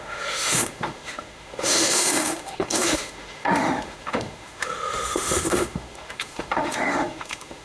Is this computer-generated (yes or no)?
yes